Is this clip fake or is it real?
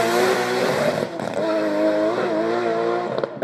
real